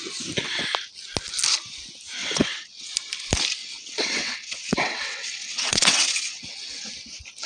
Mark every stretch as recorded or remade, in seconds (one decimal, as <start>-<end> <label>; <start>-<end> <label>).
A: 0.0-2.2 recorded; 2.2-2.9 remade; 2.9-3.6 recorded; 3.6-6.9 remade; 6.9-7.5 recorded